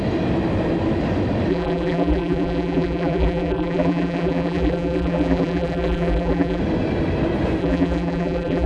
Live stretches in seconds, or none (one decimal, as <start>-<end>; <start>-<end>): 0.0-1.5; 6.6-7.6